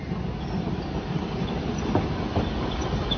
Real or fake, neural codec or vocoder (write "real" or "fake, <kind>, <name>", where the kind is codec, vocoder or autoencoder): real